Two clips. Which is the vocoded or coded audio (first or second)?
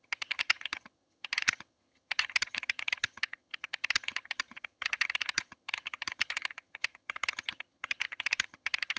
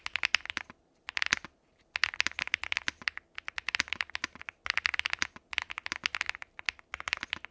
first